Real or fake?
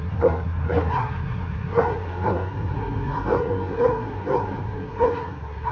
fake